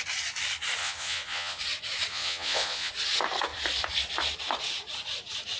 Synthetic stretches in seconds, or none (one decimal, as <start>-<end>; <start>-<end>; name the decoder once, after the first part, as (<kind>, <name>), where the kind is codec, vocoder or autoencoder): 0.8-1.6 (vocoder, Vocos); 2.1-2.9